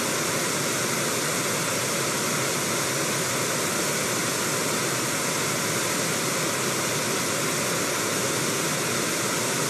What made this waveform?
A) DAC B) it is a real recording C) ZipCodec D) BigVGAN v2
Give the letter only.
B